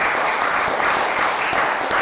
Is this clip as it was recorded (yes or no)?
no